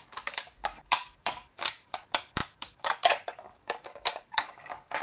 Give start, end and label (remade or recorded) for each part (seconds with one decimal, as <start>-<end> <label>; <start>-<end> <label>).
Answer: 0.0-5.0 remade